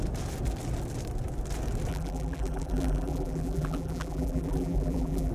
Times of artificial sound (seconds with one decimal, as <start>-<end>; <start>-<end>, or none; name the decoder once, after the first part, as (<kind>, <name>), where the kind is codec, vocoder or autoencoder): 1.9-5.3 (vocoder, BigVGAN v2)